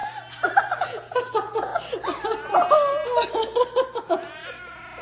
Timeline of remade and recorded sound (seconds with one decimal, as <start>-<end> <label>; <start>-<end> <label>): 0.0-0.8 recorded; 0.8-1.7 remade; 1.7-4.0 recorded; 4.0-4.4 remade; 4.4-5.0 recorded